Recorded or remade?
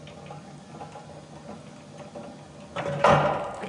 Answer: recorded